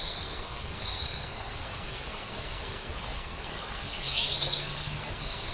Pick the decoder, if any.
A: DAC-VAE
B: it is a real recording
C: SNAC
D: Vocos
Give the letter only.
C